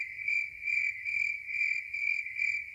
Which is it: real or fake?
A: real